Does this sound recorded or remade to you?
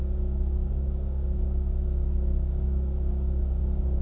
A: remade